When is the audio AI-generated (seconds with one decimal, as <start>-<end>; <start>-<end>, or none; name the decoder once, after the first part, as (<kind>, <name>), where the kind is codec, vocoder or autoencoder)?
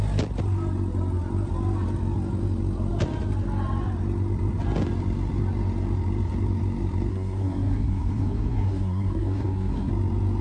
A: 7.1-9.9 (codec, SNAC)